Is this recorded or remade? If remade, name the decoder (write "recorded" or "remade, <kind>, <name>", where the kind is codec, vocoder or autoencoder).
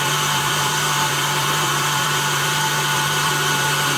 remade, vocoder, BigVGAN v2